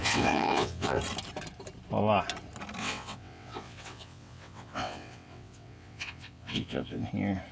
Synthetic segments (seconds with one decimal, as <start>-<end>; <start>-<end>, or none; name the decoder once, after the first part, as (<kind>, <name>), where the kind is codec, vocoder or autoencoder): 0.0-1.0 (vocoder, WaveNeXt); 2.8-7.1